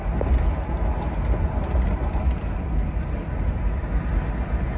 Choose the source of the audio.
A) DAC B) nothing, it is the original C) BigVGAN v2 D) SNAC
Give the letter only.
B